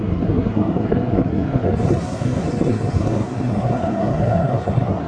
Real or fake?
fake